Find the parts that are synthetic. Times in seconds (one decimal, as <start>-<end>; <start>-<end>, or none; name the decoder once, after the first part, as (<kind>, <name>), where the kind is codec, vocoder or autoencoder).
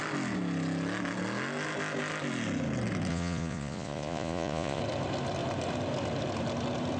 3.1-4.8 (vocoder, Vocos)